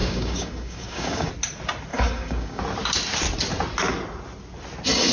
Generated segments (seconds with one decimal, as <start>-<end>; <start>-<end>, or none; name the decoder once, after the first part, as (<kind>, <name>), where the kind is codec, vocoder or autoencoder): 0.0-1.3 (codec, DAC); 1.9-2.6